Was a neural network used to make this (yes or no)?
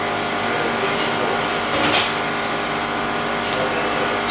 no